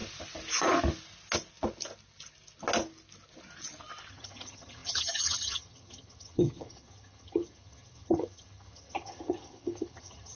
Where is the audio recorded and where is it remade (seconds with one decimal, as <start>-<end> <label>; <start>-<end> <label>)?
0.0-4.1 recorded; 4.1-10.4 remade